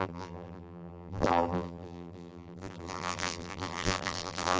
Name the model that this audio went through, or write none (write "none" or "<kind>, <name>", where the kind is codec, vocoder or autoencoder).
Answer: vocoder, BigVGAN v2